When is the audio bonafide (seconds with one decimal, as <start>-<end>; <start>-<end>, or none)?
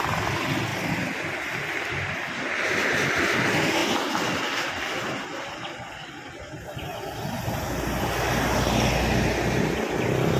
0.0-10.4